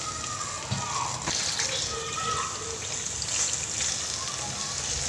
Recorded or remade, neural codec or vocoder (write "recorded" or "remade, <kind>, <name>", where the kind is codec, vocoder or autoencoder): recorded